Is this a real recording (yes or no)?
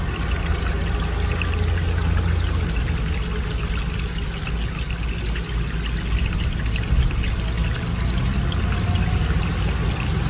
yes